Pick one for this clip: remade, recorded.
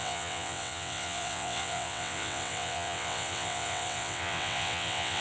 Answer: remade